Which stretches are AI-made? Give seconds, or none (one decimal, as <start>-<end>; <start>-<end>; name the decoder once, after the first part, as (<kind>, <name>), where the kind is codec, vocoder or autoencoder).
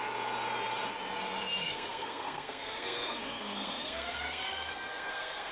1.5-5.5 (codec, SNAC)